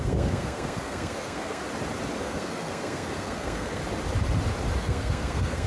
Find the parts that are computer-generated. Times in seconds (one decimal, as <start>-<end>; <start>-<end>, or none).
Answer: 0.0-1.6; 2.2-3.8; 4.8-5.7